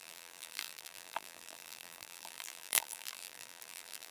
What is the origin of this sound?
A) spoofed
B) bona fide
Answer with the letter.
A